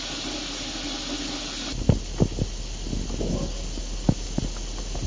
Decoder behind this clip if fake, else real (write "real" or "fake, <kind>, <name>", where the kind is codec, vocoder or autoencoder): real